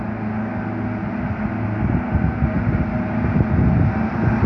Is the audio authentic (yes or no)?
yes